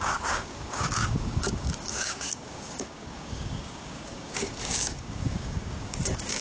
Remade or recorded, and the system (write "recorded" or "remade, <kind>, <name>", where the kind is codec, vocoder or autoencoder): remade, codec, DAC